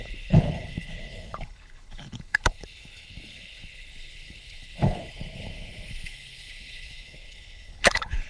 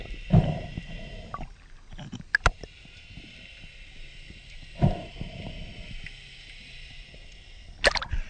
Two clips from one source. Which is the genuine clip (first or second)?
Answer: second